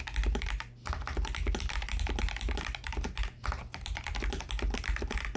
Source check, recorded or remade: recorded